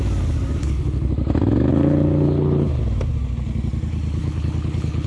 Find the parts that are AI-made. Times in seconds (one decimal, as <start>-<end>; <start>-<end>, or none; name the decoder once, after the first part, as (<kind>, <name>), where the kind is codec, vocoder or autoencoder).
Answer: 0.6-1.1 (codec, HILCodec); 1.7-2.8; 4.2-5.1